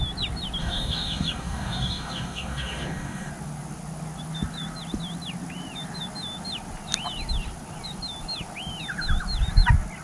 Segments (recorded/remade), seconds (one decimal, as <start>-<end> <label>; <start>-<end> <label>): 0.0-0.6 recorded; 0.6-3.3 remade; 3.3-10.0 recorded